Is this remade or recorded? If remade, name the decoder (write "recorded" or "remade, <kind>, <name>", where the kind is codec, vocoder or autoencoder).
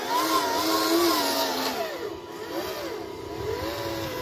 recorded